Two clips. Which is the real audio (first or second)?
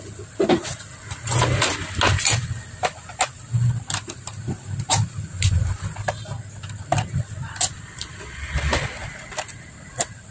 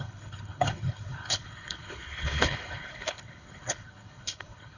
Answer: first